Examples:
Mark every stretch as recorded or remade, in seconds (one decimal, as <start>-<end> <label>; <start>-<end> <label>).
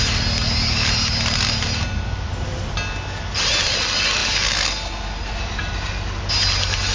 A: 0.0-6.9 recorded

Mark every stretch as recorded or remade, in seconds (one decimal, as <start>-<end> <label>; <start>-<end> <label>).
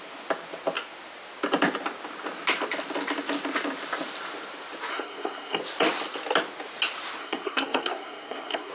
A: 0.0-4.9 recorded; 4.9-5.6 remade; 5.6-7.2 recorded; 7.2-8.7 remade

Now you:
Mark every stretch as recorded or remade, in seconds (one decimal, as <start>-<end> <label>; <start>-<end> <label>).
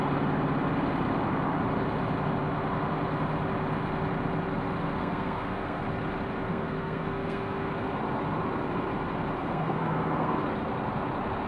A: 0.0-5.0 recorded; 5.0-5.8 remade; 5.8-6.5 recorded; 6.5-7.7 remade; 7.7-9.4 recorded; 9.4-10.4 remade; 10.4-11.5 recorded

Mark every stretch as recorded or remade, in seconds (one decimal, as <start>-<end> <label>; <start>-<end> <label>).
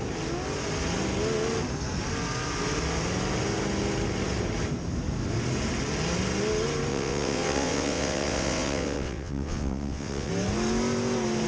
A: 0.0-6.9 recorded; 6.9-10.3 remade; 10.3-11.5 recorded